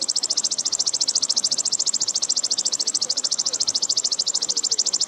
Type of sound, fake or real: fake